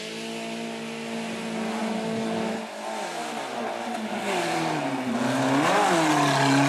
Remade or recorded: recorded